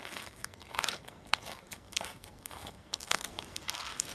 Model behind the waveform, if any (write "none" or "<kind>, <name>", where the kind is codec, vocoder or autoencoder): codec, SNAC